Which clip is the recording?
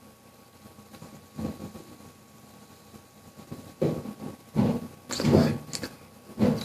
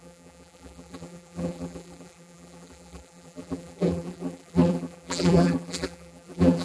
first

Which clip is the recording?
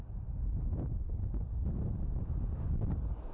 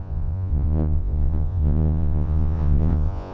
first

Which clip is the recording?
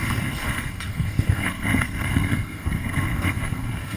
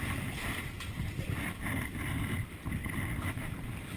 second